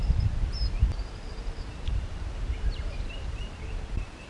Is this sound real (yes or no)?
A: no